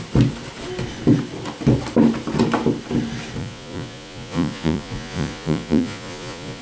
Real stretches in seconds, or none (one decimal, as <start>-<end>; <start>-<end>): 0.0-3.4